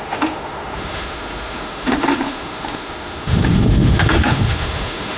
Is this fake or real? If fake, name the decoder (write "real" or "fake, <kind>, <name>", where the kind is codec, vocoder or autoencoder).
fake, autoencoder, DAC-VAE